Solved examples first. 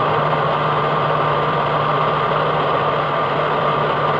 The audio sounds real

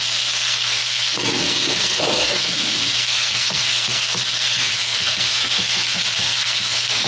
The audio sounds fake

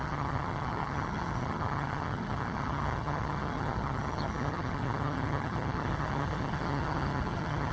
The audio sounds fake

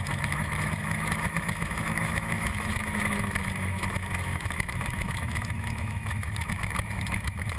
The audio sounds fake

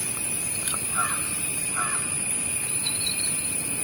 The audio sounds fake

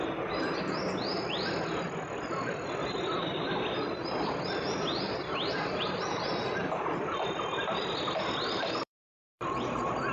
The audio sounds fake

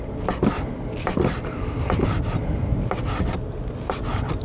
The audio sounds real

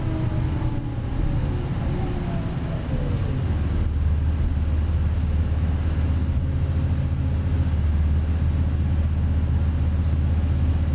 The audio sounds real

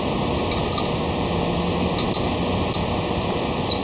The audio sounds real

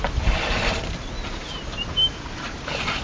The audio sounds real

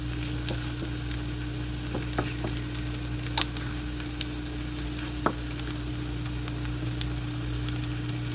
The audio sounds real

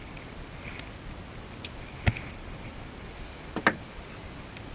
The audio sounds real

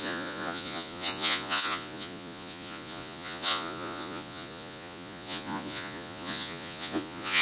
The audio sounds fake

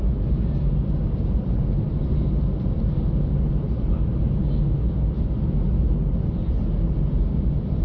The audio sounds real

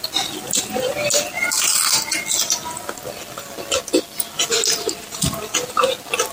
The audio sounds real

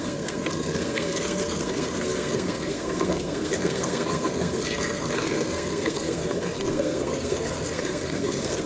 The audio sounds fake